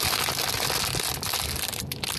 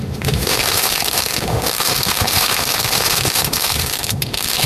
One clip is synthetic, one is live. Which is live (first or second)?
first